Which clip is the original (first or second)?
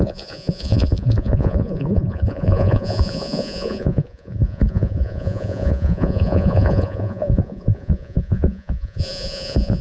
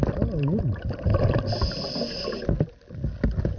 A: second